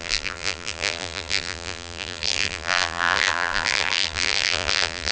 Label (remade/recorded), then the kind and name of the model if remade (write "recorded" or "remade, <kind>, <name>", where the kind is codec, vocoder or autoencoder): remade, vocoder, BigVGAN v2